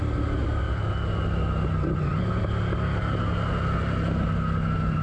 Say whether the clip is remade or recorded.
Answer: recorded